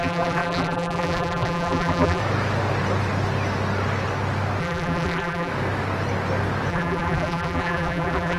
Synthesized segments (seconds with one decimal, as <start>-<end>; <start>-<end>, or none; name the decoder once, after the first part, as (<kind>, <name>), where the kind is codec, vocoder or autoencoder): 0.0-2.2 (vocoder, BigVGAN v2); 4.6-5.5; 6.7-8.4